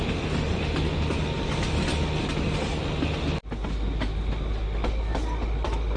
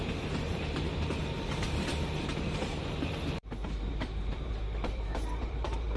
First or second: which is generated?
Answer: second